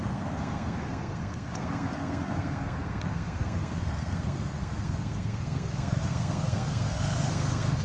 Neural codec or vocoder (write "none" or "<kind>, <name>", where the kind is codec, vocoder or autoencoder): codec, SNAC